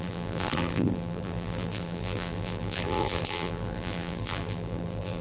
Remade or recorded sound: remade